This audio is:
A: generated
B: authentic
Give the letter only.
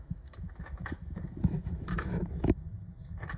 A